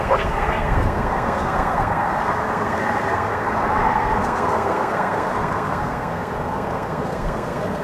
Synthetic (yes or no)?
yes